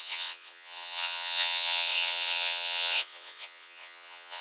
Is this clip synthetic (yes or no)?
yes